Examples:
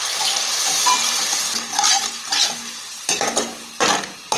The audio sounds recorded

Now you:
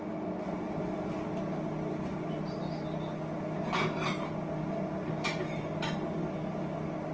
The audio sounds recorded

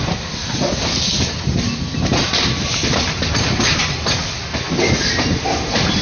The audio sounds recorded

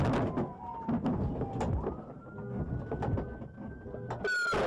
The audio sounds recorded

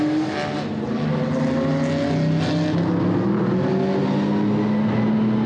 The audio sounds recorded